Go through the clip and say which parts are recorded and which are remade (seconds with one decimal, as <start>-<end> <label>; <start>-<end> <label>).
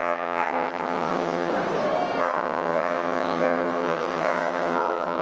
0.0-1.5 remade; 1.5-2.2 recorded; 2.2-5.2 remade